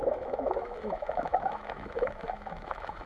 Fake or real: fake